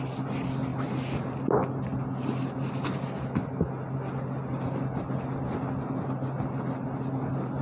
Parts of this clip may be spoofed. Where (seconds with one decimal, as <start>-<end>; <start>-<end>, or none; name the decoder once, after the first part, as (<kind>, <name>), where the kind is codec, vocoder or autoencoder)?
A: none